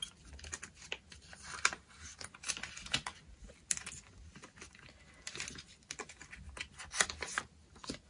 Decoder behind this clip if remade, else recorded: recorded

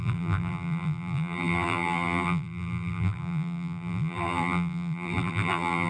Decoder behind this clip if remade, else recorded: remade, vocoder, BigVGAN v2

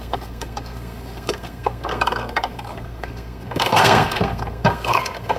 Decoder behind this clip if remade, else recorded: remade, codec, SNAC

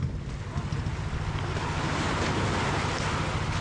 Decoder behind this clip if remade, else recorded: recorded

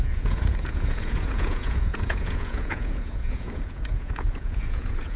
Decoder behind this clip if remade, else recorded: remade, vocoder, Vocos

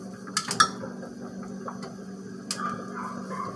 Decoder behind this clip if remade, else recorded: recorded